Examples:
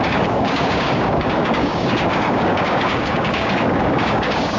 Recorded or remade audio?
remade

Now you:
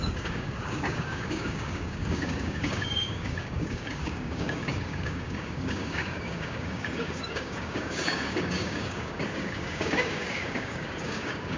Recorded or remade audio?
remade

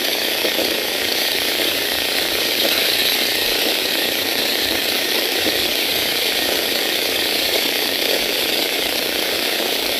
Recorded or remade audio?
remade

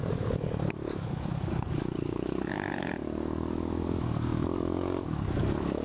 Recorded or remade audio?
remade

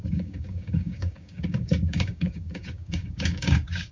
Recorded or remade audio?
remade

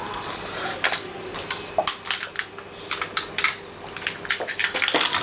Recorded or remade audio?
recorded